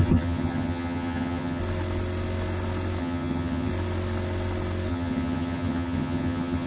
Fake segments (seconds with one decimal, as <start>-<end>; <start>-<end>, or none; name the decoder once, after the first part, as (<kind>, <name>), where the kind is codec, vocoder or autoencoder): 0.0-1.6 (vocoder, HiFi-GAN); 3.0-3.7; 4.9-6.7